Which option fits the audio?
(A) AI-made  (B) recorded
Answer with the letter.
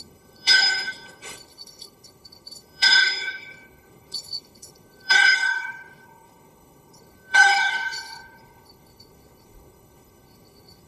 A